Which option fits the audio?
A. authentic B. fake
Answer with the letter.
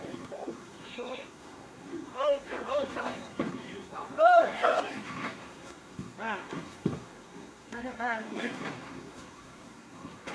B